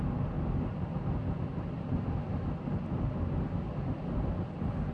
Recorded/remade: recorded